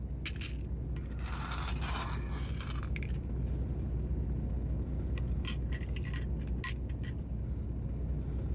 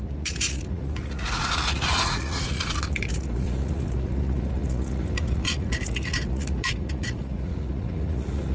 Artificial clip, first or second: second